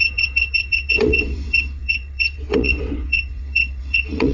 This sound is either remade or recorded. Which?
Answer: remade